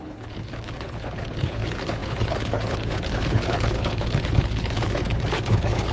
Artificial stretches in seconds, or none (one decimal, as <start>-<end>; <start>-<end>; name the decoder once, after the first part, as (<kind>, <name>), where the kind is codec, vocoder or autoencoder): 0.0-5.9 (codec, HILCodec)